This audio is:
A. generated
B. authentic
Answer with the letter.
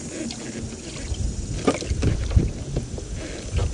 B